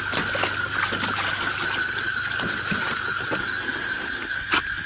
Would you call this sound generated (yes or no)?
no